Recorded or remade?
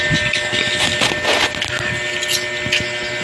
recorded